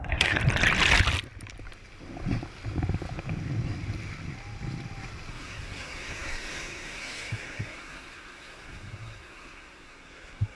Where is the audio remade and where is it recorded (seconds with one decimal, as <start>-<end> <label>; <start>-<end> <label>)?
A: 0.0-0.4 remade; 0.4-5.3 recorded; 5.3-10.5 remade